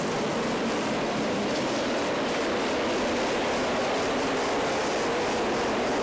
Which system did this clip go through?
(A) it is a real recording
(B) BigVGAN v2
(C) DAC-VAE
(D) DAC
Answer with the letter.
B